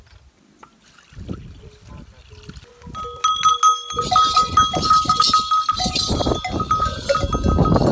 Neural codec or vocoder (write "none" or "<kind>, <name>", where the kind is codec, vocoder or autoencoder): none